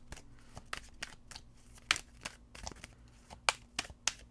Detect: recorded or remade recorded